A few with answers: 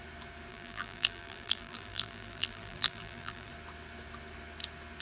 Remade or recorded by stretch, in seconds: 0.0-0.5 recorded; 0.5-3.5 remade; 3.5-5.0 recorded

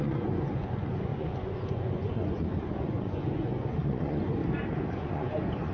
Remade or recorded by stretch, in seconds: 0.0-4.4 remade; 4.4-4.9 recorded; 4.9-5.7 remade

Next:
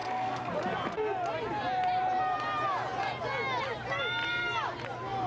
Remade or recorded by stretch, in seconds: 0.0-0.5 remade; 0.5-5.3 recorded

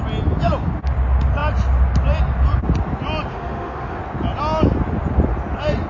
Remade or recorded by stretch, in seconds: 0.0-3.3 recorded; 3.3-4.0 remade; 4.0-5.9 recorded

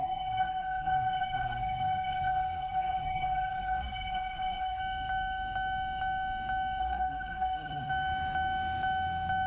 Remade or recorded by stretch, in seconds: 0.0-4.8 remade; 4.8-6.8 recorded; 6.8-7.9 remade; 7.9-9.5 recorded

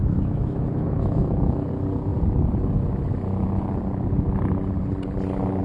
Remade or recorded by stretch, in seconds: 0.0-1.7 remade; 1.7-5.6 recorded

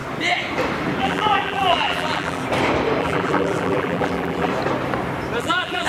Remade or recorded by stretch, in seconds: 0.0-1.0 recorded; 1.0-2.4 remade; 2.4-3.0 recorded; 3.0-4.5 remade; 4.5-5.4 recorded; 5.4-5.9 remade